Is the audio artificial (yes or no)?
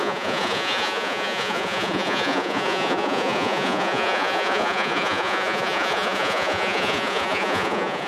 yes